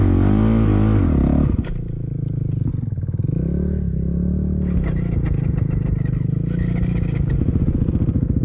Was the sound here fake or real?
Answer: real